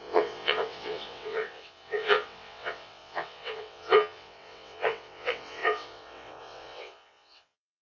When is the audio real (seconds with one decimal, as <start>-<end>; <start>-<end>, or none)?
none